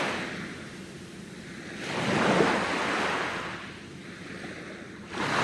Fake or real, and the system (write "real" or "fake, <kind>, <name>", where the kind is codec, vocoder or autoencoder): real